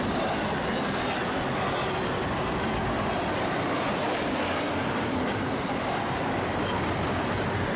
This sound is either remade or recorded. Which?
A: recorded